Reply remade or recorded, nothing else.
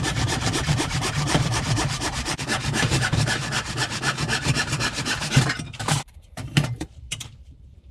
remade